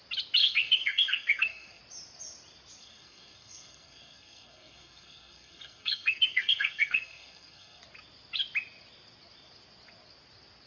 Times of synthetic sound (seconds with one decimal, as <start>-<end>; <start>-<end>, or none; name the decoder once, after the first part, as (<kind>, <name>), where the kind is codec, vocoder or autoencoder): 0.4-1.8 (codec, SNAC); 2.8-7.8